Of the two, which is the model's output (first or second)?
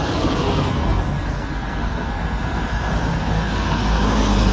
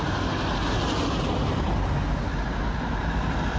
first